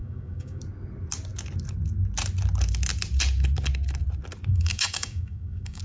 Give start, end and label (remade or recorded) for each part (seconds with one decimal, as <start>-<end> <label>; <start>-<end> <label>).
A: 0.0-0.6 remade; 0.6-4.5 recorded; 4.5-5.8 remade